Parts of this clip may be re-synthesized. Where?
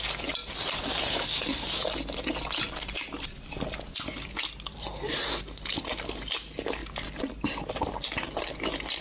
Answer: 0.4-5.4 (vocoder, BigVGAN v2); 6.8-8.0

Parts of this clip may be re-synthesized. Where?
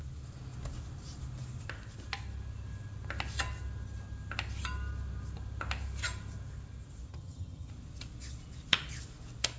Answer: 7.1-7.7 (vocoder, HiFi-GAN)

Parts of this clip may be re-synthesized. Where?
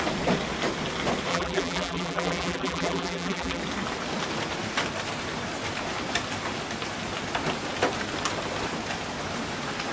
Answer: 1.3-3.6 (vocoder, BigVGAN v2)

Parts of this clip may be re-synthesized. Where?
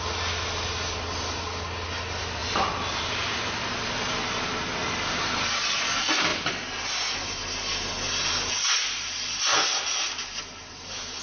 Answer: 2.4-3.4 (vocoder, BigVGAN v2)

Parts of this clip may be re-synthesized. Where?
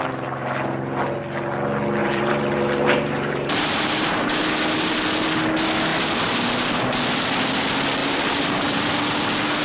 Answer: 2.0-4.4 (vocoder, BigVGAN v2); 8.0-8.9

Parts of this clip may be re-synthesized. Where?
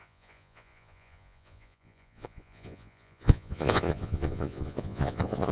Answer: 0.0-5.5 (vocoder, Vocos)